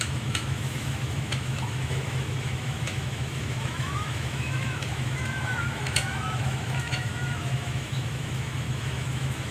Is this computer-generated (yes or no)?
yes